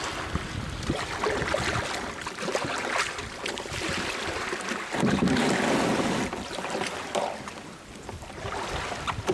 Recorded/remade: recorded